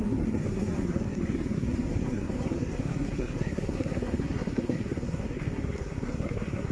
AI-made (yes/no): yes